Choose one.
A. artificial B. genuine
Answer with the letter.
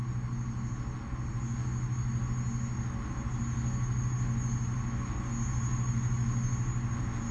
B